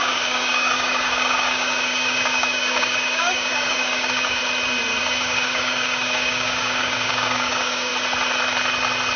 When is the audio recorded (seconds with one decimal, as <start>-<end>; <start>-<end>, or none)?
4.4-5.0; 7.9-9.2